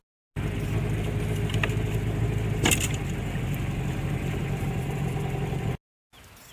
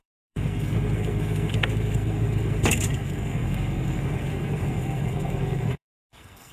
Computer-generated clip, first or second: second